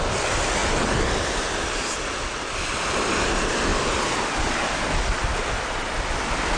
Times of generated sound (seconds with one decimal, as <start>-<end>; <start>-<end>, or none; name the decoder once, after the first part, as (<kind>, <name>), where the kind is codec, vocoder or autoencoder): 0.6-2.9 (vocoder, BigVGAN v2); 3.7-5.3